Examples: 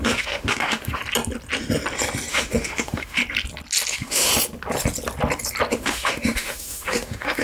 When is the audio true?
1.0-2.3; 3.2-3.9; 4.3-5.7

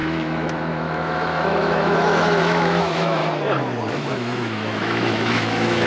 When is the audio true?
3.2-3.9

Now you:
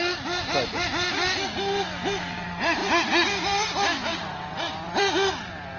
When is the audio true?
0.0-5.8